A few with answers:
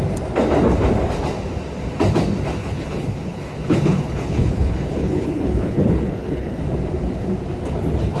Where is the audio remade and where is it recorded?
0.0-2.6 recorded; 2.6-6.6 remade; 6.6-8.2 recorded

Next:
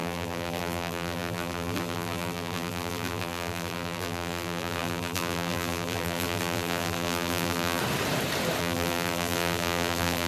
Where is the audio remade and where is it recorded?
0.0-7.8 remade; 7.8-8.6 recorded; 8.6-10.3 remade

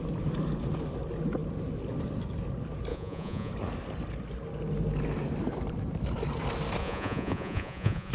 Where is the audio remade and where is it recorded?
0.0-2.9 recorded; 2.9-3.5 remade; 3.5-6.8 recorded; 6.8-8.1 remade

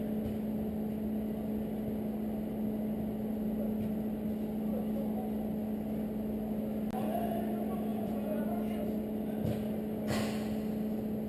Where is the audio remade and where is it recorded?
0.0-7.9 recorded; 7.9-8.4 remade; 8.4-11.3 recorded

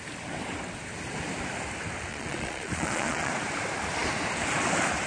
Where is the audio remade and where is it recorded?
0.0-2.1 recorded; 2.1-3.3 remade; 3.3-5.1 recorded

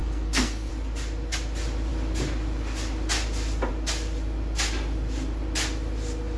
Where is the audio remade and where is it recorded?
0.0-0.7 remade; 0.7-6.4 recorded